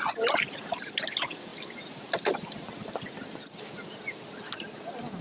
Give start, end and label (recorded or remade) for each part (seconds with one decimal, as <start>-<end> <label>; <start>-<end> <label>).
0.0-5.2 recorded